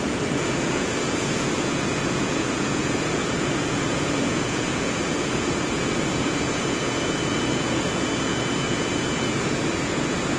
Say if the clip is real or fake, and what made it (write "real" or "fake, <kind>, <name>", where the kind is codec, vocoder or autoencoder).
fake, vocoder, Vocos